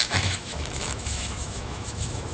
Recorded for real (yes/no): no